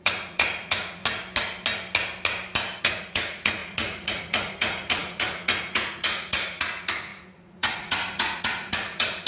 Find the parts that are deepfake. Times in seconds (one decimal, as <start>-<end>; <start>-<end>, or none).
0.0-1.0; 2.8-9.3